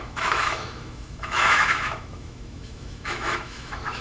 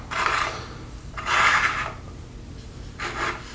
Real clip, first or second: second